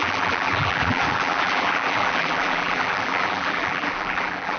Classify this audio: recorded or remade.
remade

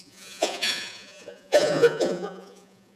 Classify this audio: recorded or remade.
remade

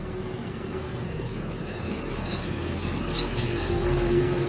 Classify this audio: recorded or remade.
remade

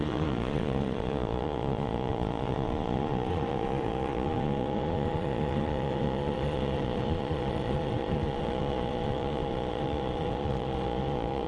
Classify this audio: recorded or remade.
remade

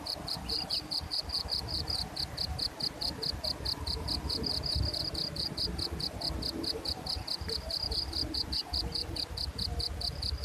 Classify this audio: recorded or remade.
recorded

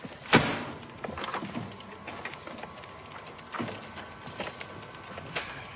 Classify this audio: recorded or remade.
recorded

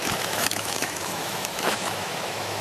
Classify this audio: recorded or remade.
remade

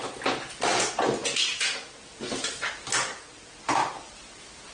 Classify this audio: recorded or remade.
remade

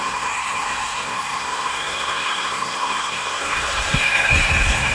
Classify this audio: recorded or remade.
remade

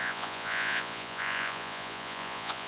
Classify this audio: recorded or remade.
remade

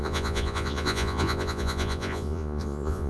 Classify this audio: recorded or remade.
remade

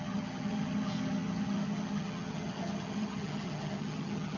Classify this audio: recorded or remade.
remade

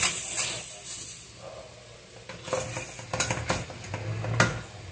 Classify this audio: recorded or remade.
recorded